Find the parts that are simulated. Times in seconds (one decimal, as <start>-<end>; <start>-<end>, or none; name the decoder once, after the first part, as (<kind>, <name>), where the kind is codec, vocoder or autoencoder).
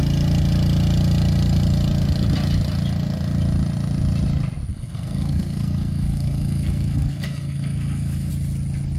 4.7-8.3 (codec, SNAC)